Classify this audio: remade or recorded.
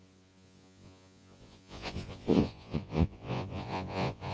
remade